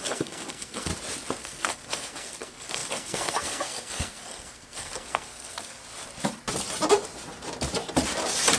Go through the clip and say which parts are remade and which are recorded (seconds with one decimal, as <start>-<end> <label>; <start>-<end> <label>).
0.0-0.9 remade; 0.9-1.4 recorded; 1.4-5.8 remade; 5.8-8.6 recorded